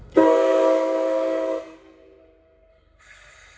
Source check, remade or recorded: remade